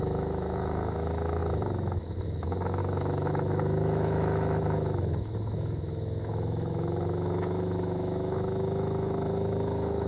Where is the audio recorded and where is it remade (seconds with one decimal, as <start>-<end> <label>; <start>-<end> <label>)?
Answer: 0.0-10.1 remade